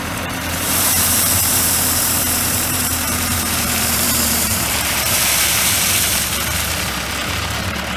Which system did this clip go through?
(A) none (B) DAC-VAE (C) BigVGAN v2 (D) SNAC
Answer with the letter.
C